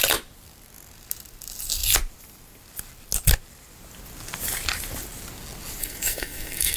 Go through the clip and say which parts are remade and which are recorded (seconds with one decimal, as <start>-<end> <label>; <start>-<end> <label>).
0.0-5.8 recorded; 5.8-6.8 remade